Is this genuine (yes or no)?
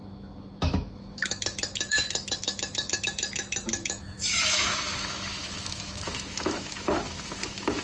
no